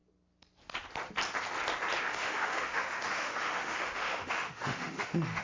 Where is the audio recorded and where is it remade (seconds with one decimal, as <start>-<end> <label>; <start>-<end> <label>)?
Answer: 0.0-2.0 recorded; 2.0-5.4 remade